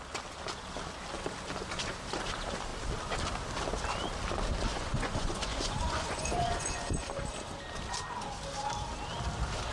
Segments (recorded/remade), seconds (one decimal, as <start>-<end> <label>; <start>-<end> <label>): 0.0-4.7 recorded; 4.7-7.1 remade; 7.1-9.7 recorded